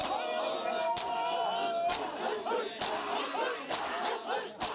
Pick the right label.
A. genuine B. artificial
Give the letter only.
A